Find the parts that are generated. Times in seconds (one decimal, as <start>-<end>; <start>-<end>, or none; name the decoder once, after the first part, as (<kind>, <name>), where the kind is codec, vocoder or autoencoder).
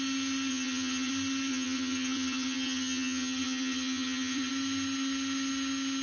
0.5-1.1 (vocoder, HiFi-GAN); 1.5-4.5